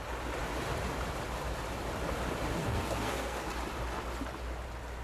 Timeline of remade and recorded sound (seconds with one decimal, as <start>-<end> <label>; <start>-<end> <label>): 0.0-2.6 recorded; 2.6-3.5 remade; 3.5-5.0 recorded